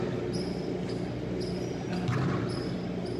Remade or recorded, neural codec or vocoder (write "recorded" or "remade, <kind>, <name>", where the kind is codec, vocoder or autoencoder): recorded